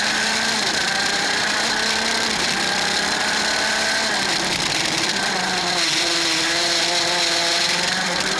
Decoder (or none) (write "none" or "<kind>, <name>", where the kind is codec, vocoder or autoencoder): vocoder, BigVGAN v2